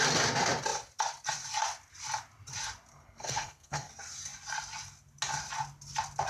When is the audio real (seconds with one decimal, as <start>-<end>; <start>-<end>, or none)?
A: 0.0-2.9; 3.9-6.3